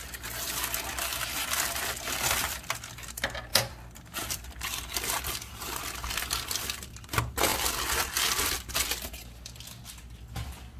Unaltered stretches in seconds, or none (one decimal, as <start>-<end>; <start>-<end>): 0.0-1.1; 2.7-3.5; 5.8-10.8